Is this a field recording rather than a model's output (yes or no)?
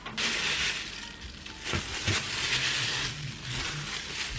yes